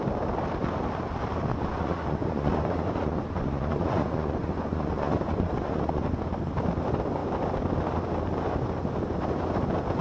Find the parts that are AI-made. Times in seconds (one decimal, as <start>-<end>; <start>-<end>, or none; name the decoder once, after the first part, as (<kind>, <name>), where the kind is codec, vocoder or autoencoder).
1.5-6.0 (vocoder, Vocos)